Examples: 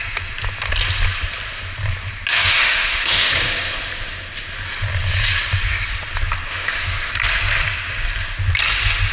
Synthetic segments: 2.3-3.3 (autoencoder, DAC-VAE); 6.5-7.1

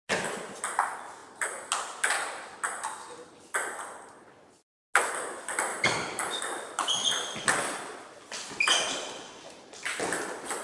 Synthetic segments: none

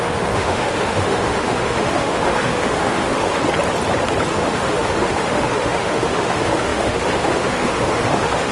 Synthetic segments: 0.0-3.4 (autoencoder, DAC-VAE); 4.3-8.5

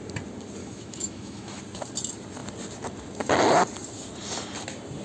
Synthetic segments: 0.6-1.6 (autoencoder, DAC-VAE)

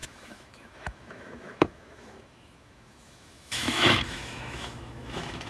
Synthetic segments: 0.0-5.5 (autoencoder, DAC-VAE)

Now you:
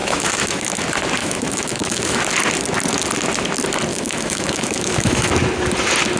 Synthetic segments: 0.0-0.7 (autoencoder, DAC-VAE); 1.2-2.2; 3.9-5.3